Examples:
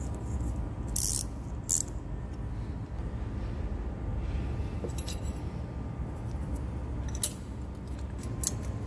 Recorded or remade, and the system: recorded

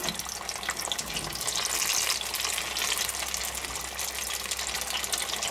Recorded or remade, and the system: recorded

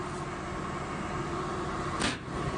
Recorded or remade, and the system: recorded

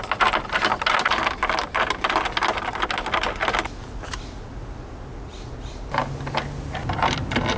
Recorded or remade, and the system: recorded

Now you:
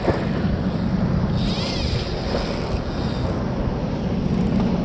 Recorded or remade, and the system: recorded